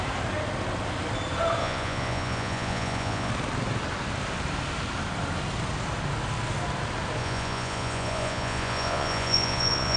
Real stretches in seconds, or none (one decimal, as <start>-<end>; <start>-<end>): 0.0-1.6; 3.3-7.2

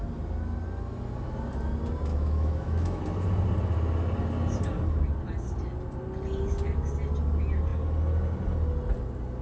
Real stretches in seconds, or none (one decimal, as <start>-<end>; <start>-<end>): 0.0-2.1; 3.0-9.4

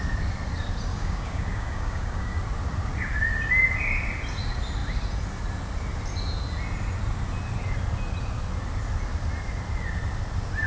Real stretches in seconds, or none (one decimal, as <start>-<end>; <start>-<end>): 0.0-0.9; 2.4-10.7

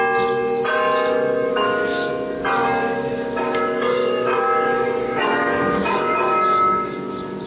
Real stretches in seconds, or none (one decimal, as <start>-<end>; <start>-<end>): 0.0-1.5; 2.1-2.6; 7.1-7.5

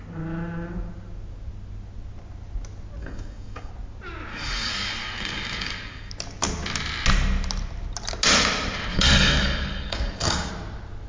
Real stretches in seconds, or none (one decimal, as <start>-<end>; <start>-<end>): 0.0-3.0; 3.7-4.3; 6.1-8.9; 10.5-11.1